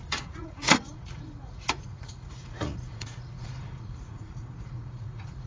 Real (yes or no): no